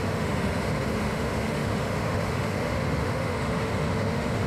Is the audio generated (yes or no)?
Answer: yes